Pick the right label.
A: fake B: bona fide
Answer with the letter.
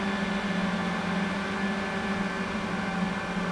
B